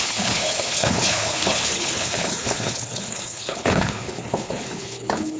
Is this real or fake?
fake